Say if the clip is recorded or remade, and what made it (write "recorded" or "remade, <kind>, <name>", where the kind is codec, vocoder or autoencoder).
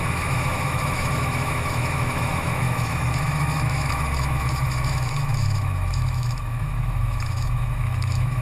remade, autoencoder, DAC-VAE